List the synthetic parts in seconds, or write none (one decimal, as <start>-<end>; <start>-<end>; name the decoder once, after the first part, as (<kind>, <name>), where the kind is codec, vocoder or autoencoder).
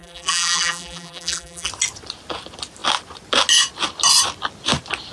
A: 0.0-1.7 (vocoder, BigVGAN v2)